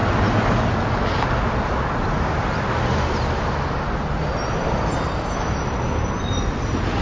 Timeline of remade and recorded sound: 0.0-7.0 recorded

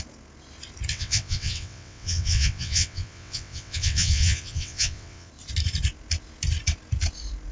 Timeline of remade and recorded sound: 0.0-0.9 recorded; 0.9-5.3 remade; 5.3-7.5 recorded

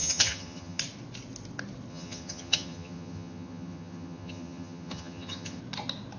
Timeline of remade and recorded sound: 0.0-0.8 remade; 0.8-1.9 recorded; 1.9-5.6 remade; 5.6-6.2 recorded